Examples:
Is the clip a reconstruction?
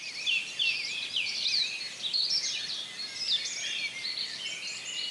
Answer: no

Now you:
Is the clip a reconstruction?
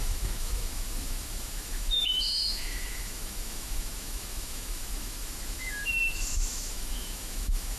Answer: yes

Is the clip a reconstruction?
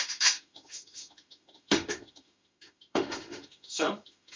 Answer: yes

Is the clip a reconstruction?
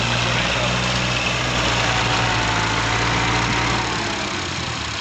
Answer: no